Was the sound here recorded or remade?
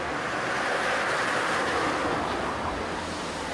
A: recorded